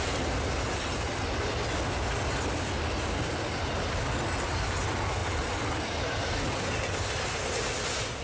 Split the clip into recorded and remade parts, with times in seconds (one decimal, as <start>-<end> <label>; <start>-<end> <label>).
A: 0.0-8.2 recorded